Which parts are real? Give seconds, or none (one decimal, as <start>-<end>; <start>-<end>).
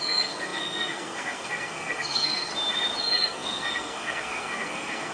2.5-3.0